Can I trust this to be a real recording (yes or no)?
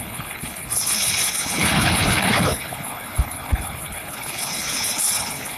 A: no